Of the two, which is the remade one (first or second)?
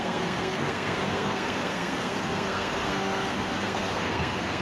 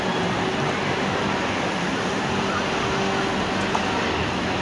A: first